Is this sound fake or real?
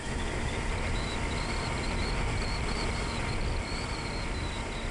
fake